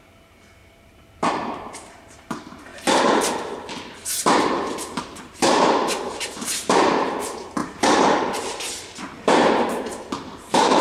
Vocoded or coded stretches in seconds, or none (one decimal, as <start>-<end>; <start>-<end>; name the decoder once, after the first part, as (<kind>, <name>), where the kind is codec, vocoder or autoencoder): 0.0-2.7 (vocoder, BigVGAN v2); 4.4-10.8